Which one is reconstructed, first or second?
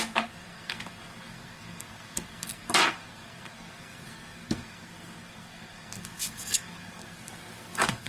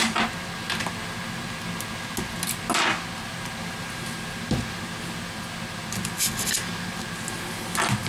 first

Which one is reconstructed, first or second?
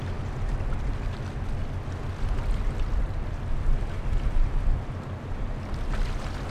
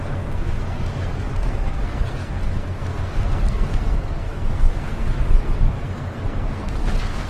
second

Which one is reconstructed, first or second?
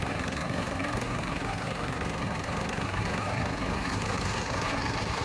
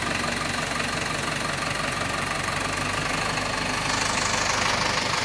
first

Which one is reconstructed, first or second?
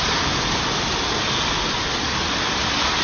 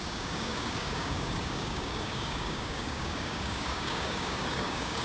second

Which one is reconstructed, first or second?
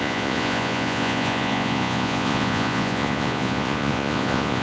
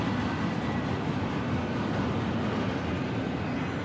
first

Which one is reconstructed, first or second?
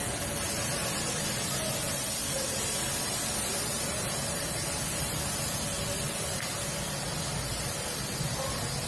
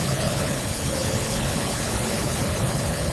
second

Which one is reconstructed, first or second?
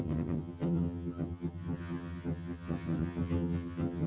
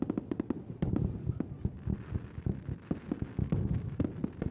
first